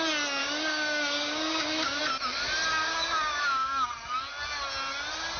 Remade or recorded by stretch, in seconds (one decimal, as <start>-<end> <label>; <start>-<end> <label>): 0.0-0.4 recorded; 0.4-2.0 remade; 2.0-2.9 recorded; 2.9-3.9 remade; 3.9-5.4 recorded